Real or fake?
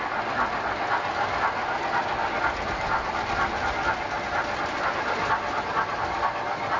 real